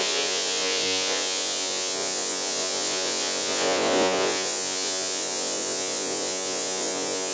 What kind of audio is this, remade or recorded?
remade